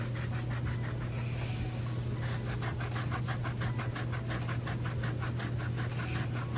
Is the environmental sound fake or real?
real